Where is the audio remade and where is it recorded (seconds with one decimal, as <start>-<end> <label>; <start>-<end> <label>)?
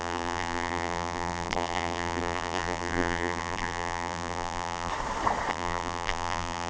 0.0-4.9 remade; 4.9-5.5 recorded; 5.5-6.7 remade